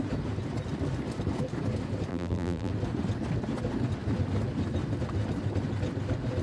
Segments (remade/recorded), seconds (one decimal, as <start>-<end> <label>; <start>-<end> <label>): 0.0-2.1 recorded; 2.1-2.7 remade; 2.7-6.4 recorded